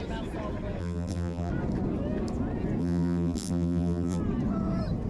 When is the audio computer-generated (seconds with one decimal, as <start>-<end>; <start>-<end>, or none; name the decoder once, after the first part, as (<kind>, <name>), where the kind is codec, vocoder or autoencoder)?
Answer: 0.8-1.5 (vocoder, BigVGAN v2); 2.8-4.2